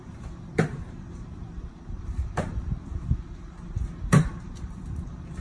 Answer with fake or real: fake